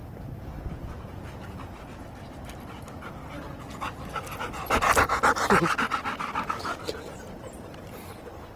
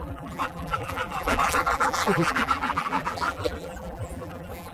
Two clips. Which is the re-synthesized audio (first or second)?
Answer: second